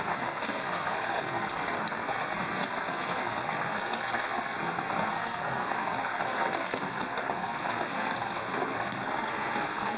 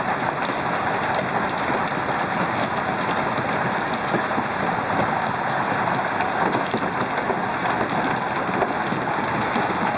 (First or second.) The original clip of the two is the second